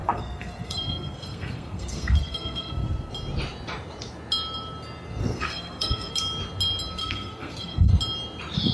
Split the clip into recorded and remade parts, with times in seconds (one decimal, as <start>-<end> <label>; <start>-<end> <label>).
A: 0.0-3.1 remade; 3.1-5.2 recorded; 5.2-6.1 remade; 6.1-7.0 recorded; 7.0-7.9 remade; 7.9-8.7 recorded

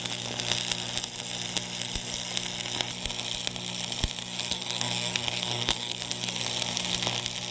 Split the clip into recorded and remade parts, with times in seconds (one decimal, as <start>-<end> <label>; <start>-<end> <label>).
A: 0.0-4.2 recorded; 4.2-6.4 remade; 6.4-7.5 recorded

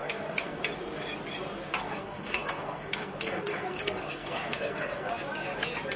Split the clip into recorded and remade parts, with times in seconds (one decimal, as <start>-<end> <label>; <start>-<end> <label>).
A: 0.0-0.6 remade; 0.6-1.8 recorded; 1.8-5.2 remade; 5.2-6.0 recorded

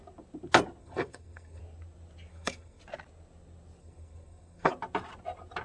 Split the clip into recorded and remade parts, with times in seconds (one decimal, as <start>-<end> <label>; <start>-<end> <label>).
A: 0.0-0.8 recorded; 0.8-1.6 remade; 1.6-2.3 recorded; 2.3-2.8 remade; 2.8-3.8 recorded; 3.8-4.7 remade; 4.7-5.6 recorded

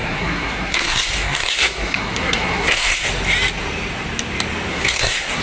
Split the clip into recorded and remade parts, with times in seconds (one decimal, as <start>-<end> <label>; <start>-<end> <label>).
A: 0.0-3.1 remade; 3.1-4.7 recorded; 4.7-5.4 remade